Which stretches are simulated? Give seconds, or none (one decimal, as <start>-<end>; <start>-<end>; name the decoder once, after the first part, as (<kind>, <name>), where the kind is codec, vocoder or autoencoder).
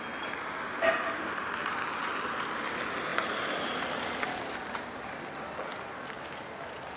none